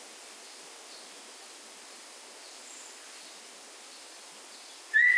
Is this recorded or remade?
recorded